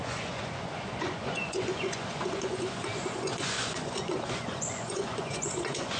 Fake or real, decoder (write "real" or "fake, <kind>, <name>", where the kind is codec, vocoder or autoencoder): fake, vocoder, Vocos